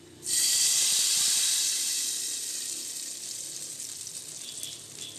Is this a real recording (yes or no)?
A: no